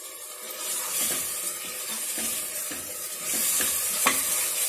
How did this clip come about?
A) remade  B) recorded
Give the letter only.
B